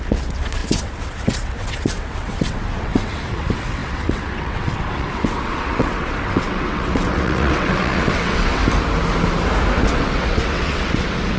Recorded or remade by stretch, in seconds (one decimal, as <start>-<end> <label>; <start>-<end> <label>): 0.0-8.6 remade; 8.6-9.9 recorded; 9.9-11.4 remade